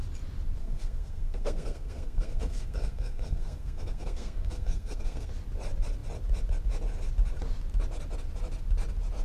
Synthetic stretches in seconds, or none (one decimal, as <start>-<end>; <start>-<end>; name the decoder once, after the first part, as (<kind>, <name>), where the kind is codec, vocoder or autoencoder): 0.6-5.3 (codec, SNAC)